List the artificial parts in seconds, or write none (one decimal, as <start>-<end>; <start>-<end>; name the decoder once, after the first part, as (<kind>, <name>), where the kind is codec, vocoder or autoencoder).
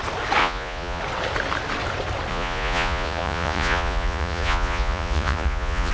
0.4-1.0 (vocoder, Vocos); 2.3-5.9